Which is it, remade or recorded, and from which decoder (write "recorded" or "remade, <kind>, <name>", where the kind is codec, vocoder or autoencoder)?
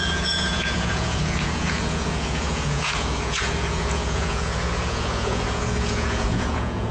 remade, vocoder, Vocos